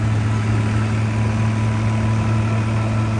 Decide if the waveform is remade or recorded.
recorded